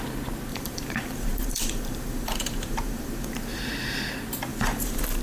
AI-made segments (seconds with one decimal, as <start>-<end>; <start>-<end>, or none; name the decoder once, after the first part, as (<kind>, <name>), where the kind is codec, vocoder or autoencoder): 0.5-3.6 (vocoder, BigVGAN v2); 4.5-5.2